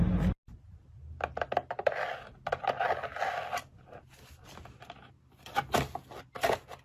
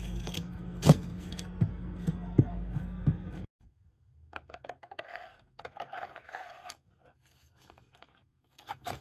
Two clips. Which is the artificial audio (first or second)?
second